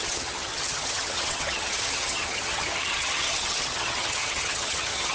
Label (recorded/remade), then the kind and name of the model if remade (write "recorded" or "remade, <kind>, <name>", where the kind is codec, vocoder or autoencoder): remade, vocoder, HiFi-GAN